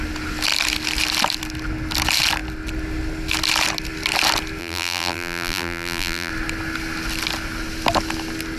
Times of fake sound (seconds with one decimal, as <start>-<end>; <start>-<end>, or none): 4.6-6.3